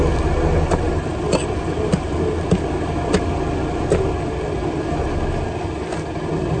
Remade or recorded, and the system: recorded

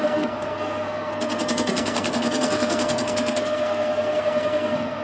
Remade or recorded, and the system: remade, codec, SNAC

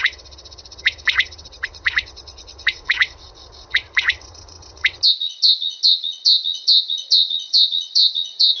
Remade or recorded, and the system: remade, vocoder, WaveNeXt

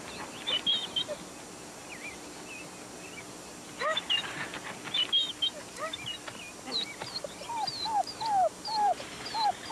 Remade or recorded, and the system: recorded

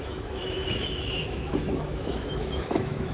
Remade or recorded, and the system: remade, autoencoder, DAC-VAE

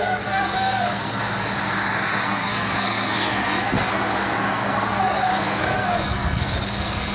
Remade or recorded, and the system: remade, codec, SNAC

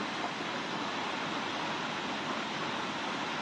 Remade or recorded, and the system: recorded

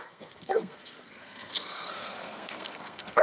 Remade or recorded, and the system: remade, codec, SNAC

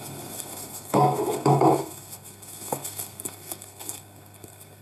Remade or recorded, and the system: remade, codec, SNAC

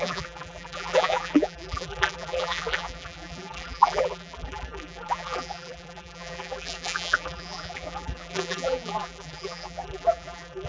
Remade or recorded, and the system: remade, vocoder, BigVGAN v2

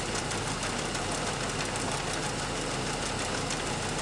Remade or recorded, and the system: recorded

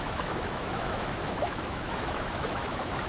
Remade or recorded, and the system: remade, autoencoder, DAC-VAE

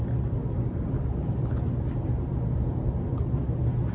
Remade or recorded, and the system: recorded